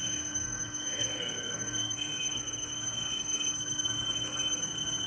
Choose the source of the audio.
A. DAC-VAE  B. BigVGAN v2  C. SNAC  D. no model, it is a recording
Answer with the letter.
C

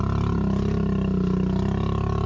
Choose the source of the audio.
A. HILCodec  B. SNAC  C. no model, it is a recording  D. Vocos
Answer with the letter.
C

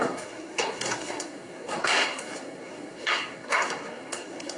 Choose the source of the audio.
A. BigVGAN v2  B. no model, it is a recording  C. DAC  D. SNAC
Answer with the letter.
D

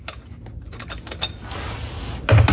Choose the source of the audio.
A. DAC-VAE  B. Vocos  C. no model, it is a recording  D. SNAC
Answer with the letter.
C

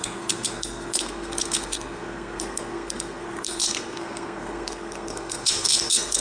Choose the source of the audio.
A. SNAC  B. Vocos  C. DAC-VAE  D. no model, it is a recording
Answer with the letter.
A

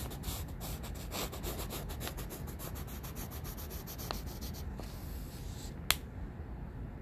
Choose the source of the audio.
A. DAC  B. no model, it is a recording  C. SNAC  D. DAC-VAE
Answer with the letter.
B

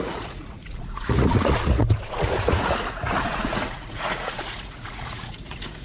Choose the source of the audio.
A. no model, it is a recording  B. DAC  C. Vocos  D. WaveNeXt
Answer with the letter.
C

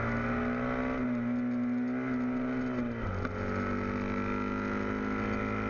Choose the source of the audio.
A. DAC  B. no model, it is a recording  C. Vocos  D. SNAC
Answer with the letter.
B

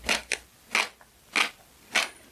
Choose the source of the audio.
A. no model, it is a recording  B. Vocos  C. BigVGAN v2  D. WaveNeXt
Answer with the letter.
A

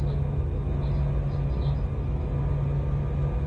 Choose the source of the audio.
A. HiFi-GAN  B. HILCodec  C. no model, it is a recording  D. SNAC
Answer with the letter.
C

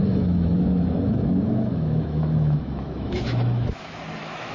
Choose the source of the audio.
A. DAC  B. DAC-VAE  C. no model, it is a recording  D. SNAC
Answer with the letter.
B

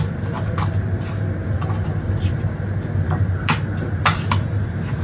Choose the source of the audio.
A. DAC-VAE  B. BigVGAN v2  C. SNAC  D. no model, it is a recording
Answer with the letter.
D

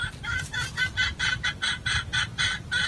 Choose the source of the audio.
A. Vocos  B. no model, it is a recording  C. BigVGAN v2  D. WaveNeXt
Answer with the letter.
B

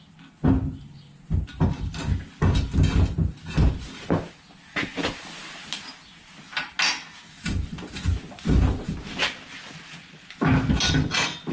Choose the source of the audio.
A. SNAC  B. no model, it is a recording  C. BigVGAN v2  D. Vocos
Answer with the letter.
B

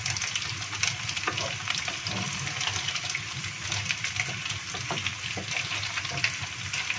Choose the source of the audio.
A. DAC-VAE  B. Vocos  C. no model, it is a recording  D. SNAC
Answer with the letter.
C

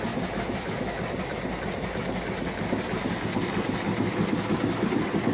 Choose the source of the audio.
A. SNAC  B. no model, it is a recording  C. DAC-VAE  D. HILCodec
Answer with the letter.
B